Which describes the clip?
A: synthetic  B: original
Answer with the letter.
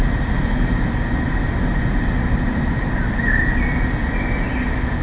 B